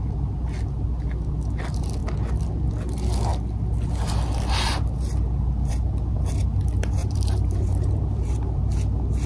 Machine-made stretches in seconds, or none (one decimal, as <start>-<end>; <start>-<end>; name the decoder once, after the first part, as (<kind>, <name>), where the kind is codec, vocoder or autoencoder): 7.0-8.7 (vocoder, BigVGAN v2)